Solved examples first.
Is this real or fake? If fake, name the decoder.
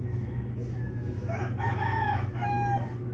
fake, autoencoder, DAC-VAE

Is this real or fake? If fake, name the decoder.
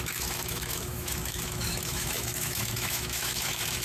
fake, autoencoder, DAC-VAE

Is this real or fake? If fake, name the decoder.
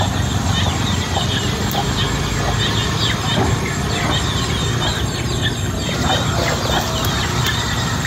real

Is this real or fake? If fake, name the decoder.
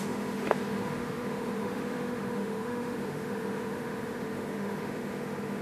fake, autoencoder, DAC-VAE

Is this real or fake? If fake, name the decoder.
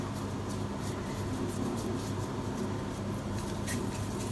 real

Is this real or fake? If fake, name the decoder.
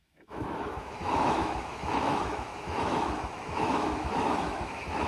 fake, autoencoder, DAC-VAE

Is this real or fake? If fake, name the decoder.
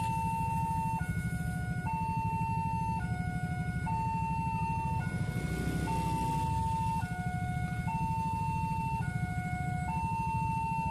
real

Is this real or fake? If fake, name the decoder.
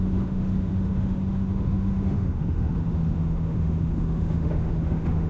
fake, autoencoder, DAC-VAE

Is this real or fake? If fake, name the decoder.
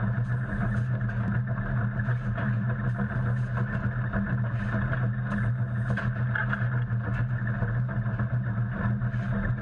real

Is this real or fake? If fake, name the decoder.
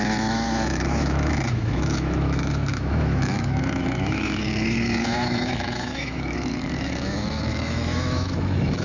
fake, autoencoder, DAC-VAE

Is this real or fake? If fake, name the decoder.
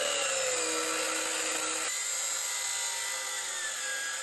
real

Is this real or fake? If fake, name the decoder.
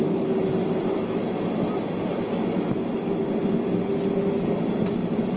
real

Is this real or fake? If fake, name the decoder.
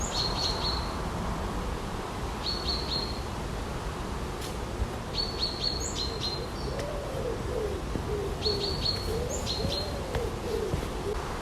real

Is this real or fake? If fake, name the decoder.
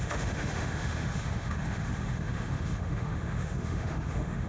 fake, autoencoder, DAC-VAE